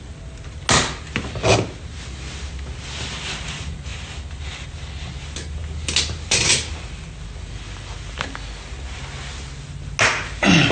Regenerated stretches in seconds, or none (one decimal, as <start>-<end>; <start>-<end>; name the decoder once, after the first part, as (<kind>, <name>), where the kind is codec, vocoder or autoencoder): none